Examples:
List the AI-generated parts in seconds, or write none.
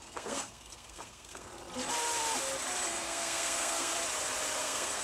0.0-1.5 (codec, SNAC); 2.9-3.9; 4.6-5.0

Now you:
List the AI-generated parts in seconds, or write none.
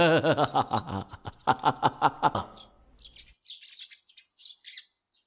none